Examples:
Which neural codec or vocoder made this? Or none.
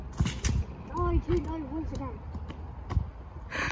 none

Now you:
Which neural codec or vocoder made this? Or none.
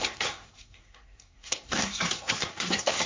codec, SNAC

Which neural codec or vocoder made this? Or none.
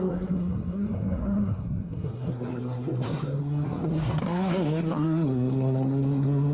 codec, SNAC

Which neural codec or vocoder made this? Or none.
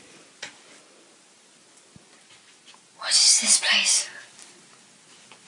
none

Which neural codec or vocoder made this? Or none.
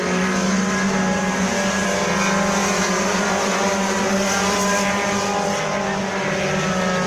none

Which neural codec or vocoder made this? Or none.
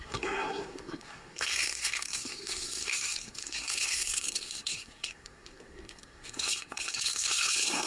codec, SNAC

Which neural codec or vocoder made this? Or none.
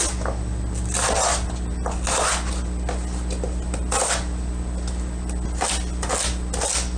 none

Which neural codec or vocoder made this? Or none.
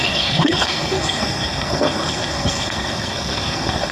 codec, SNAC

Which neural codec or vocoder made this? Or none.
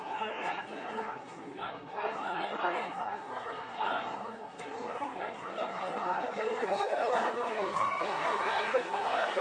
codec, SNAC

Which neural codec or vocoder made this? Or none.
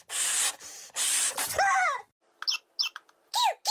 none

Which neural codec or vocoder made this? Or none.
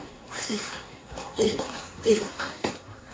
codec, SNAC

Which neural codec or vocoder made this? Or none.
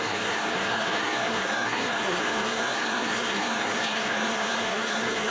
codec, SNAC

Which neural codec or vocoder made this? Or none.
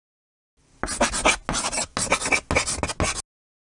none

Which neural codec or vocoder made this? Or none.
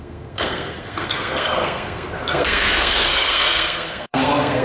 codec, SNAC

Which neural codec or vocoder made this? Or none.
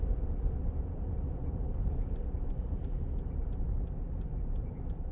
none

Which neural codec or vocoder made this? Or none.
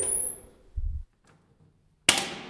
none